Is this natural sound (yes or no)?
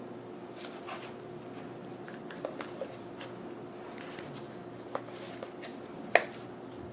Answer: yes